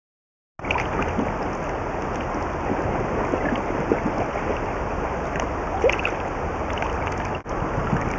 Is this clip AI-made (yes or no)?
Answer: no